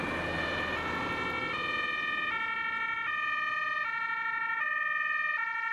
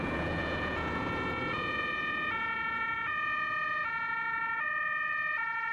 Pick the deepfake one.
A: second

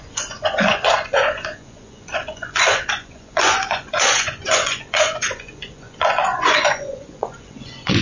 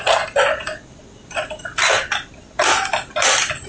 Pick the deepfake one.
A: first